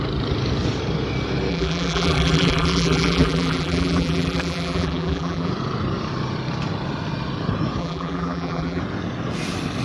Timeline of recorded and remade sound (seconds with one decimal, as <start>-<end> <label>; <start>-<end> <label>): 0.0-1.5 recorded; 1.5-5.5 remade; 5.5-7.8 recorded; 7.8-8.8 remade; 8.8-9.8 recorded